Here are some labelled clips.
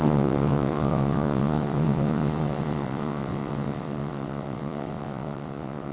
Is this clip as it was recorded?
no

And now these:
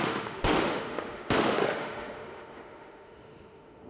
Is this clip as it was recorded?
no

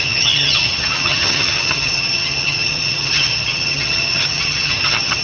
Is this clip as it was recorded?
no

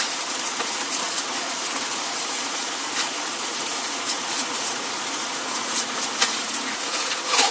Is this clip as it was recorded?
no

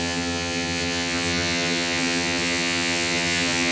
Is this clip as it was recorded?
no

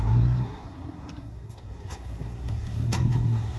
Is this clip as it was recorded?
no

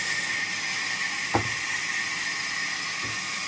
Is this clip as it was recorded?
yes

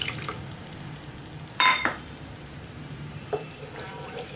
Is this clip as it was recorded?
no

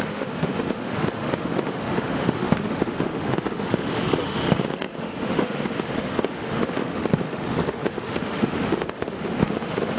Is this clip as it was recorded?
no